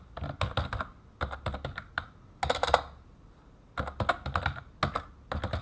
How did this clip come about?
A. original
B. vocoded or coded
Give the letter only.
A